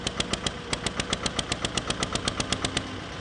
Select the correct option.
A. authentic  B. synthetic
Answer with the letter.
A